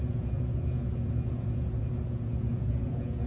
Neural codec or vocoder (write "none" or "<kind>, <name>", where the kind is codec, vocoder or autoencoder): vocoder, Vocos